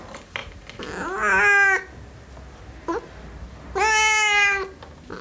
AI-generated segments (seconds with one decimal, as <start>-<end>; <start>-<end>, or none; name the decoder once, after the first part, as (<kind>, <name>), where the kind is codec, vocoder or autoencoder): none